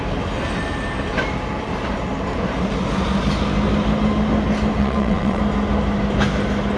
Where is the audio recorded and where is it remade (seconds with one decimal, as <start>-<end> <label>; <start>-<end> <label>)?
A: 0.0-4.8 recorded; 4.8-5.4 remade; 5.4-6.8 recorded